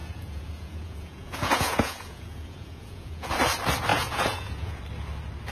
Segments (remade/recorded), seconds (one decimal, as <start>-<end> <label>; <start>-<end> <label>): 0.0-3.3 remade; 3.3-3.9 recorded; 3.9-4.8 remade; 4.8-5.5 recorded